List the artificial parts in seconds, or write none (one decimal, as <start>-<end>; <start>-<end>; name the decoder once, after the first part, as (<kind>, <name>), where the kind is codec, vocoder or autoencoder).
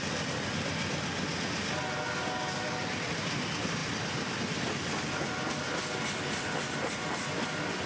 none